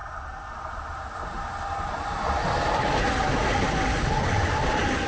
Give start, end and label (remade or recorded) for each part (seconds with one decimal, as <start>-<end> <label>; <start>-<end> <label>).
0.0-5.1 recorded